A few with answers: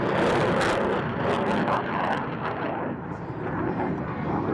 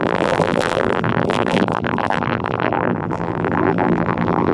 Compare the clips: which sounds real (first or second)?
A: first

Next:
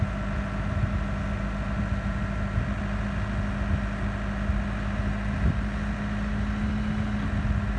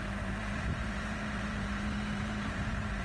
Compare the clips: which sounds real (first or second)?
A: first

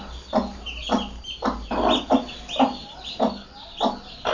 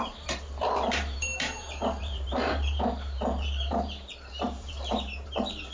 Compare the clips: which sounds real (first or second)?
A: first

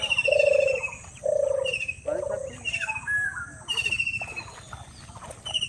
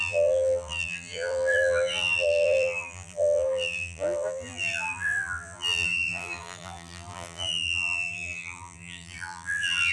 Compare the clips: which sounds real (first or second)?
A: first